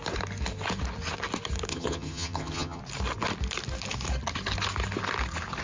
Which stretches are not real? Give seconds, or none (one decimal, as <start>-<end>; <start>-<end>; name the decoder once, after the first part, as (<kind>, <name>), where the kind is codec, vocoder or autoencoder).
1.7-2.8 (vocoder, HiFi-GAN)